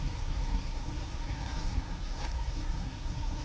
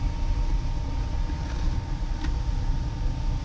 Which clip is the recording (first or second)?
second